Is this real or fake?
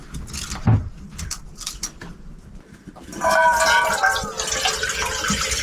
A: real